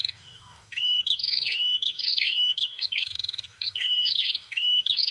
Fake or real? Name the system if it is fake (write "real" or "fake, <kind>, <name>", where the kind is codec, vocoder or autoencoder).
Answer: fake, codec, DAC